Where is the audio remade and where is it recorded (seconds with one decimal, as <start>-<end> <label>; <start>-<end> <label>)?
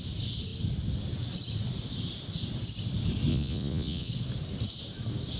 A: 0.0-3.3 recorded; 3.3-4.1 remade; 4.1-5.4 recorded